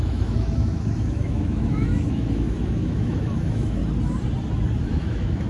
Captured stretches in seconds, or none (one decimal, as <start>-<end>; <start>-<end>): 3.8-4.8